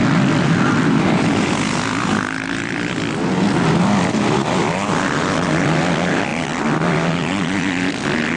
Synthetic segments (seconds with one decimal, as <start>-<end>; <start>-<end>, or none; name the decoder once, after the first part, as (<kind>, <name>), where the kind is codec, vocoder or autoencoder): none